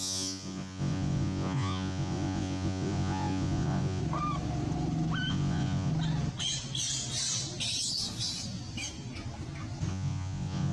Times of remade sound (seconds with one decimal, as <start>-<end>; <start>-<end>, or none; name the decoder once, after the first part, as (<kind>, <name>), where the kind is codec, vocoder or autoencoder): 0.0-4.0 (vocoder, Vocos); 5.3-5.9; 9.9-10.7